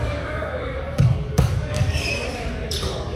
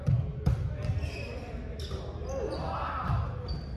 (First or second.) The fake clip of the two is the first